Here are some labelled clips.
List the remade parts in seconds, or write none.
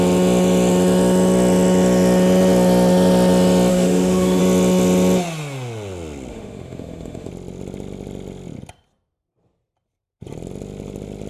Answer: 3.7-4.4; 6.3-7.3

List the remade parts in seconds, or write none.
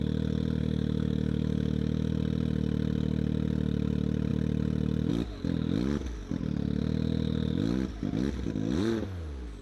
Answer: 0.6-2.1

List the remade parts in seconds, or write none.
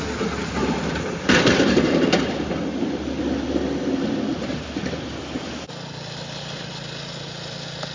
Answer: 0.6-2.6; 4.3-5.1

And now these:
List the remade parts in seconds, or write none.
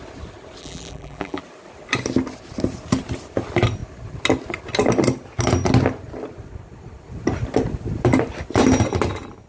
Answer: 0.6-1.4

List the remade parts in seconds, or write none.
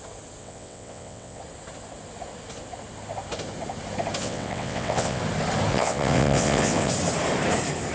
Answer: 0.4-1.4; 4.2-5.2; 5.7-6.9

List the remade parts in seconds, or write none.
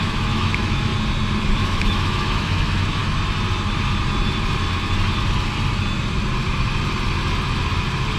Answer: 0.0-0.9; 1.5-3.0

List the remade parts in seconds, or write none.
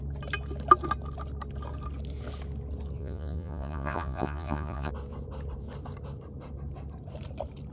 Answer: 3.0-4.9